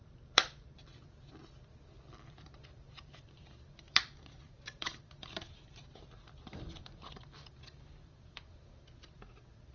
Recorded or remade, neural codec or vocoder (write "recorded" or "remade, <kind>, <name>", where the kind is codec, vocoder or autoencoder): remade, vocoder, BigVGAN v2